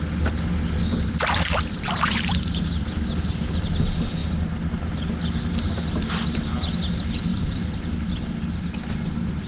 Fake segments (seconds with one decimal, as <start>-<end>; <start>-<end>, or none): 0.9-3.6; 7.3-7.9